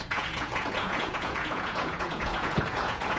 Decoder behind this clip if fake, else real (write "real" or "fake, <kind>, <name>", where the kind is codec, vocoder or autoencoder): fake, vocoder, Vocos